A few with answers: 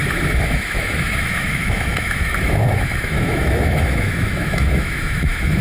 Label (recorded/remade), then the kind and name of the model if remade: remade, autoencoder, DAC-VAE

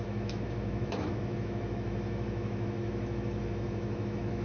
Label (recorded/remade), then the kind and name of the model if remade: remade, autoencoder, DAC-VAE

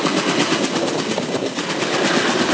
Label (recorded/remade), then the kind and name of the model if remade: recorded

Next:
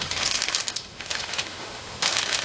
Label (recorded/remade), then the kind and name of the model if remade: remade, autoencoder, DAC-VAE